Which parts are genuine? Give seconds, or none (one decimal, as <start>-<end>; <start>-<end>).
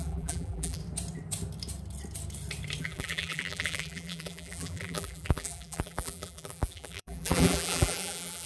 0.8-2.8